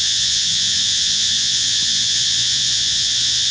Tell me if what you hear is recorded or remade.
remade